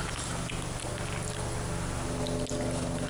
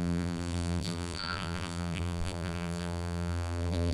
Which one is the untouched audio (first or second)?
first